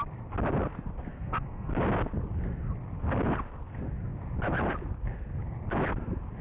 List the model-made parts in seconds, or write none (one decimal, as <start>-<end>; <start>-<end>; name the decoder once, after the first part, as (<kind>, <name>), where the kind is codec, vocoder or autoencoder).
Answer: 1.1-1.7 (codec, SNAC)